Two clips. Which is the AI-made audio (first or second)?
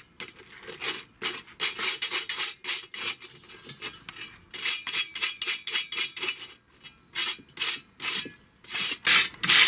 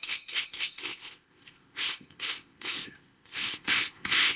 second